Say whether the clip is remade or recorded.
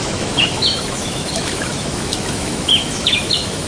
remade